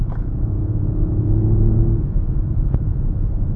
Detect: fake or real fake